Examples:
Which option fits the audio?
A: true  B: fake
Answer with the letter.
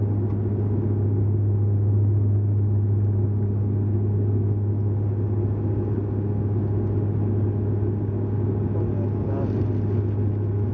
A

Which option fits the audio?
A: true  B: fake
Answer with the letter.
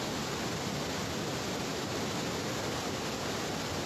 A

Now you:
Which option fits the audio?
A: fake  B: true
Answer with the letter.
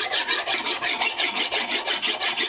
B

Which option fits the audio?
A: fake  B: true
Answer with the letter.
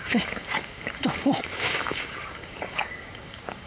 A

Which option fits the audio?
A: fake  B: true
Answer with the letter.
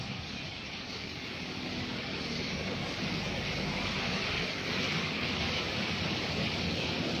A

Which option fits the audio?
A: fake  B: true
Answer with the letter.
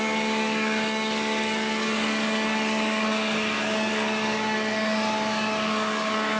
A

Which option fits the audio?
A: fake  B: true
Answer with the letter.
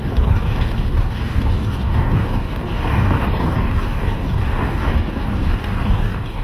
A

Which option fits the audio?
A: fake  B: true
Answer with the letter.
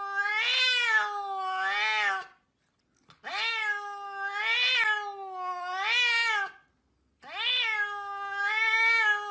B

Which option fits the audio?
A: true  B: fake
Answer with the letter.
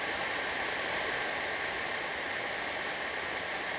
A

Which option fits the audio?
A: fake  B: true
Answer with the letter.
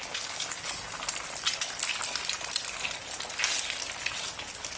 B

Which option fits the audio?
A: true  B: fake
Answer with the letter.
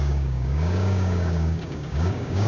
B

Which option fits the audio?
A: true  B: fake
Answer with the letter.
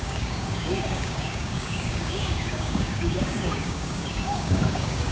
B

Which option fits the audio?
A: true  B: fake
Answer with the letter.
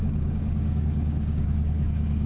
B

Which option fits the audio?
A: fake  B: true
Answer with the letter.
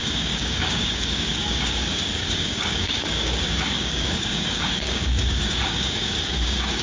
A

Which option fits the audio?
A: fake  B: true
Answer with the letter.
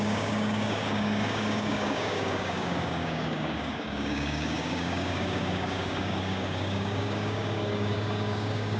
A